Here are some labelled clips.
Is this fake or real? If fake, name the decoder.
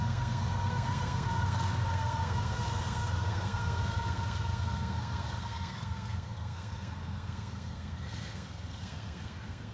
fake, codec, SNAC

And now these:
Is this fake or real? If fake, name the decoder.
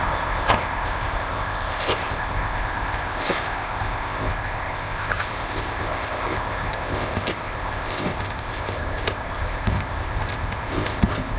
fake, codec, ZipCodec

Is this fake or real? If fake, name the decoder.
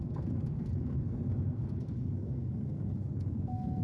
fake, codec, SNAC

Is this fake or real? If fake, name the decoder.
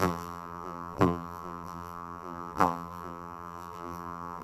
fake, vocoder, BigVGAN v2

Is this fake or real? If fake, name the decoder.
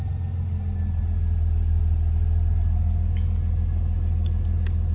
real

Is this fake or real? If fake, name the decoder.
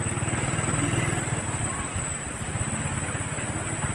real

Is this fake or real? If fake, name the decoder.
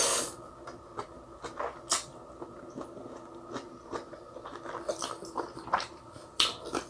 real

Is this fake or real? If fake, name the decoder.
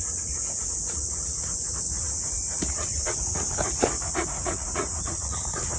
fake, vocoder, Vocos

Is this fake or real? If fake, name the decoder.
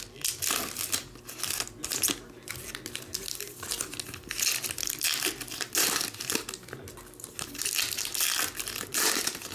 real